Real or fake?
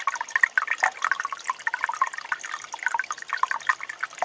real